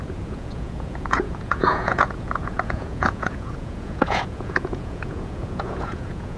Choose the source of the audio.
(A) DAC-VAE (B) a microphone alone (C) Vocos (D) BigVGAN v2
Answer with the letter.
C